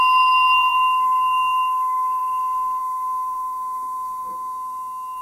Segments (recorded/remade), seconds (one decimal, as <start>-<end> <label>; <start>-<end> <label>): 0.0-5.2 remade